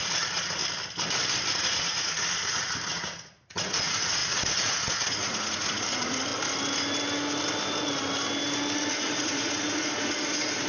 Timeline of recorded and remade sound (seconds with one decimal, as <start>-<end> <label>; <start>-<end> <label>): 0.0-0.6 remade; 0.6-1.5 recorded; 1.5-6.3 remade; 6.3-8.9 recorded; 8.9-10.7 remade